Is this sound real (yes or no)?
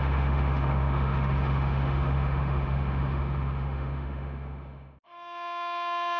no